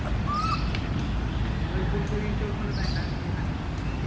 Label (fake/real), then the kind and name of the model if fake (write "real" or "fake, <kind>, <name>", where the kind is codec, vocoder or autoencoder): real